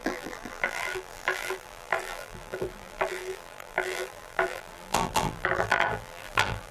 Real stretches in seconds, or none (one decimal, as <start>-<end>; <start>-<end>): none